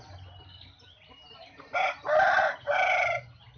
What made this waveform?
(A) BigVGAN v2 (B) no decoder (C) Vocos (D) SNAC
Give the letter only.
B